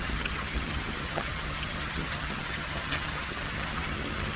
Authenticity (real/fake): fake